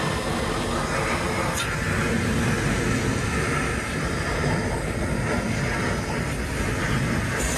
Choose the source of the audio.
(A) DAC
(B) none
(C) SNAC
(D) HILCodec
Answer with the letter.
B